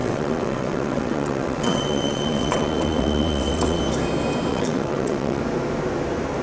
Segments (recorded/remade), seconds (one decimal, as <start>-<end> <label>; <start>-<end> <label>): 0.0-3.8 remade; 3.8-4.5 recorded; 4.5-5.4 remade; 5.4-6.4 recorded